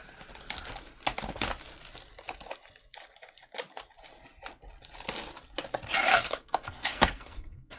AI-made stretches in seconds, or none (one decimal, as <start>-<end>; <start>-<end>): 6.1-7.8